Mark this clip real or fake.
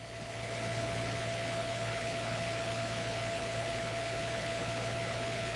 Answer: fake